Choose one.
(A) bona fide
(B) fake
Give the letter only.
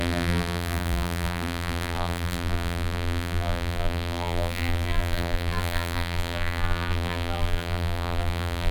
B